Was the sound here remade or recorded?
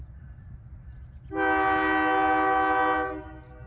recorded